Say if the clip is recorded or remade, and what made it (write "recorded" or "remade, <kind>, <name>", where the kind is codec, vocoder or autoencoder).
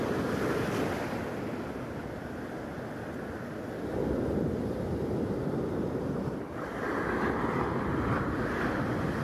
recorded